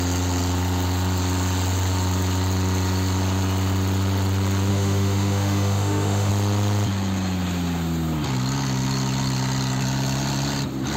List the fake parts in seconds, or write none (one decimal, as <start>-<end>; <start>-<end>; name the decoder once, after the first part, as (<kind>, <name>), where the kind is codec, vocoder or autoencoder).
4.7-6.3 (autoencoder, DAC-VAE)